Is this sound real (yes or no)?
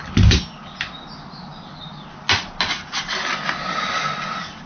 yes